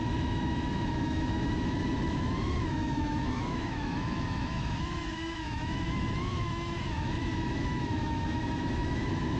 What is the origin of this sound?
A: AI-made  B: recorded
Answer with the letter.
A